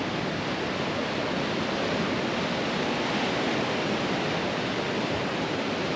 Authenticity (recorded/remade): recorded